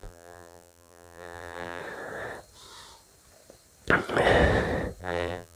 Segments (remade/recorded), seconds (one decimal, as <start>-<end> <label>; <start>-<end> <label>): 0.0-1.8 remade; 1.8-5.0 recorded; 5.0-5.6 remade